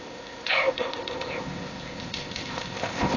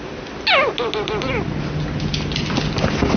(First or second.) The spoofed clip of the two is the first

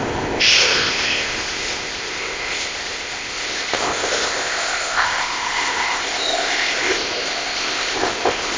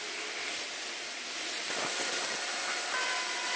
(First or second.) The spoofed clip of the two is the first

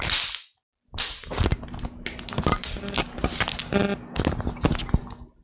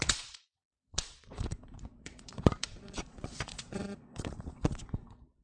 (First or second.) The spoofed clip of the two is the second